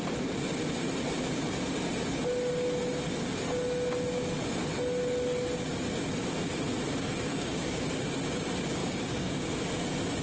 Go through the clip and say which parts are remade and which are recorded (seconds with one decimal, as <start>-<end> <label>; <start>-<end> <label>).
0.0-7.3 recorded; 7.3-7.9 remade; 7.9-8.8 recorded; 8.8-9.5 remade; 9.5-10.2 recorded